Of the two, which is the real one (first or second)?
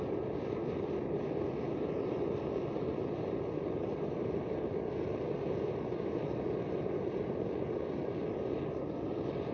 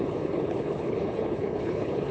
first